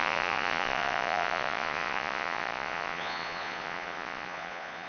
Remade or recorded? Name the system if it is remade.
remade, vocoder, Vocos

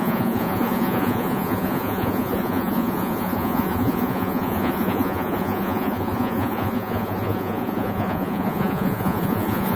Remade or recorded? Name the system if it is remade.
remade, vocoder, Vocos